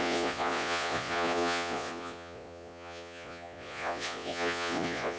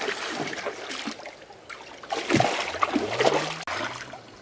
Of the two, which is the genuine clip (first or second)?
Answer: second